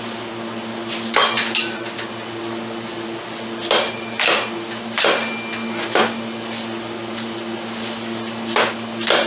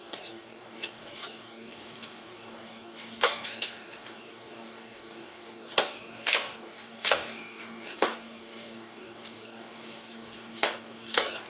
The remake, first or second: second